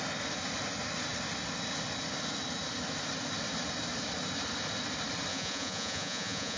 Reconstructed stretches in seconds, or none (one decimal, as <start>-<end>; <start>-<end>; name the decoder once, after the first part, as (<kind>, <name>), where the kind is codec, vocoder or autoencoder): 5.3-6.6 (vocoder, Vocos)